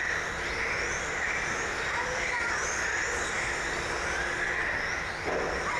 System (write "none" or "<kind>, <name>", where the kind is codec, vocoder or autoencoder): none